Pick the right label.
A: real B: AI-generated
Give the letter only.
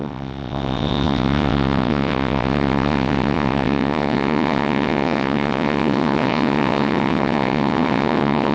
B